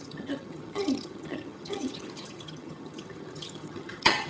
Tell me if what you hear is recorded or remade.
remade